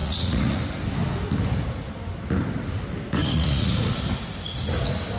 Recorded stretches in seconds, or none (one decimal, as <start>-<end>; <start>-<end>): 0.6-3.2; 4.0-5.2